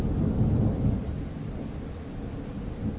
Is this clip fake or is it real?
real